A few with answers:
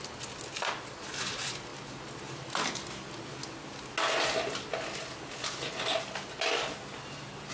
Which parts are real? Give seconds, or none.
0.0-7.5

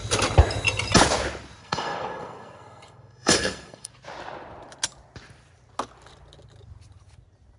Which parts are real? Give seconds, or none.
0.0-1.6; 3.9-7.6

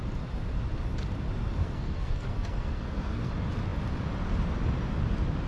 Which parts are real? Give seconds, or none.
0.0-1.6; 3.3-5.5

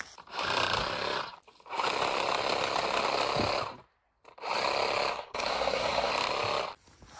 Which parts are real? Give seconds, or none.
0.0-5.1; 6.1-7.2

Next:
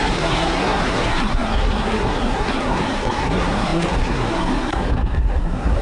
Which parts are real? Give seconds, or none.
none

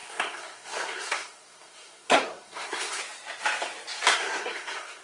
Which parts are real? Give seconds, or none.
3.0-4.1

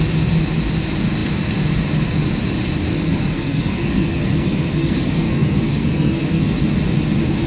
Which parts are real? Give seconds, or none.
0.0-2.9; 6.7-7.5